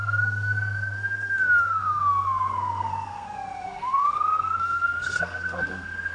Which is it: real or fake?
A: fake